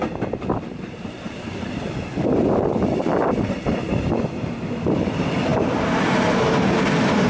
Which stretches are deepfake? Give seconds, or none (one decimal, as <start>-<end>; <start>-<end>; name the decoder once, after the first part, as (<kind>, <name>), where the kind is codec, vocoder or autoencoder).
0.0-4.2 (vocoder, BigVGAN v2)